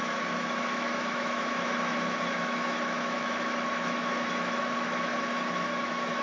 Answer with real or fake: fake